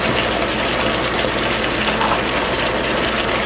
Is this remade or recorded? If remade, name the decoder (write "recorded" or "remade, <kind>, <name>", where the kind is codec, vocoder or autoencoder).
recorded